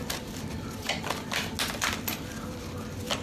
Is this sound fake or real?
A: real